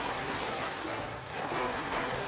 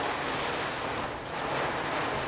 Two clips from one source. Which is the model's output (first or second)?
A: first